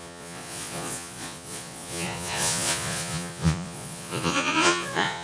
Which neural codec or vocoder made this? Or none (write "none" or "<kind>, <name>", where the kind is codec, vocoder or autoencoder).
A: vocoder, Vocos